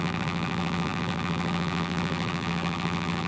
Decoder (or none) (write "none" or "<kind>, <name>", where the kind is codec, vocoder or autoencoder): vocoder, BigVGAN v2